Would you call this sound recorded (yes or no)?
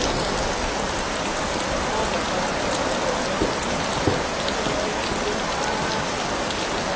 yes